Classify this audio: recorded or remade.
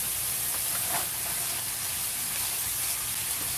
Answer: recorded